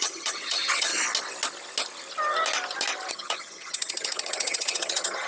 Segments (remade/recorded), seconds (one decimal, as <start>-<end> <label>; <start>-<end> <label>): 0.0-0.9 remade; 0.9-3.1 recorded; 3.1-5.3 remade